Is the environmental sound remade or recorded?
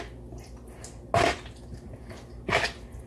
recorded